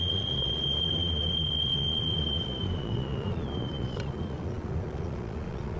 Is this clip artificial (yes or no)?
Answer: yes